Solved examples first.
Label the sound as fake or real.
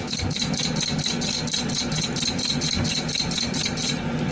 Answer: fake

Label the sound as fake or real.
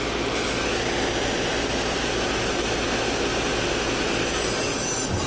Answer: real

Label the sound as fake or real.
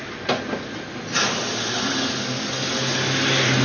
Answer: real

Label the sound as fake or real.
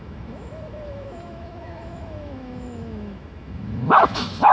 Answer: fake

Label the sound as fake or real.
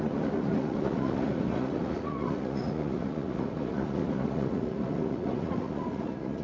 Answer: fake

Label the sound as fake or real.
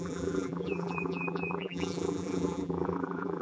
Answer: fake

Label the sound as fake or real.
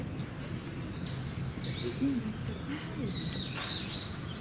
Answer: real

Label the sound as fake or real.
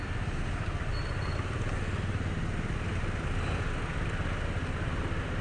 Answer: real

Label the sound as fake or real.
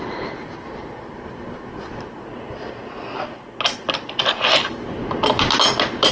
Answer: real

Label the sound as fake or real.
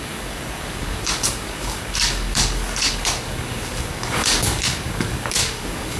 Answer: fake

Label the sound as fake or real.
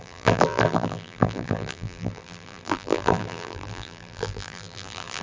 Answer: fake